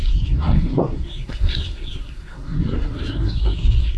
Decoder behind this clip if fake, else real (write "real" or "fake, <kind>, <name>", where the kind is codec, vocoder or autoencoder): fake, codec, SNAC